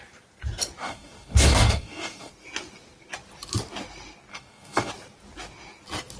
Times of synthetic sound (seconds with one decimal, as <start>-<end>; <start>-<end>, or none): 0.8-2.3; 4.3-4.9